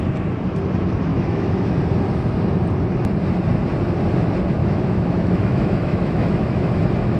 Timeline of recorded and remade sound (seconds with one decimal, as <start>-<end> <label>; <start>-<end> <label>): 0.0-1.1 recorded; 1.1-1.7 remade; 1.7-4.6 recorded; 4.6-6.7 remade; 6.7-7.2 recorded